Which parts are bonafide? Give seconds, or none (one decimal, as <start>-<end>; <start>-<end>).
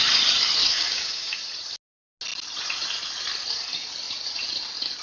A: 0.0-0.6; 1.4-5.0